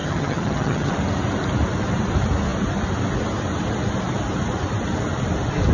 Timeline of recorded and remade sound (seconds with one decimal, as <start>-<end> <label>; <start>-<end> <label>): 0.0-0.9 remade; 0.9-5.7 recorded